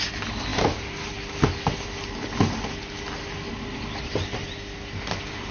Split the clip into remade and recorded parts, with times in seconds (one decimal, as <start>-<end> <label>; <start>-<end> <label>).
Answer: 0.0-5.5 recorded